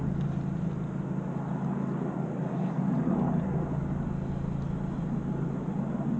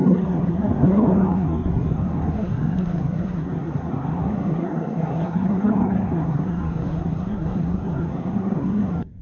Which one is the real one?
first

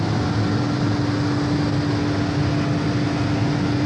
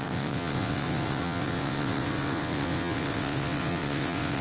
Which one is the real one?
first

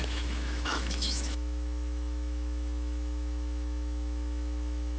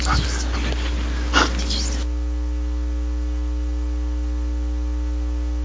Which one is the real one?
second